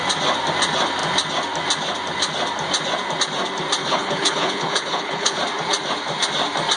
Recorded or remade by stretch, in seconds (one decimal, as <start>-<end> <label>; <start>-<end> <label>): 0.0-3.8 recorded; 3.8-5.4 remade; 5.4-6.8 recorded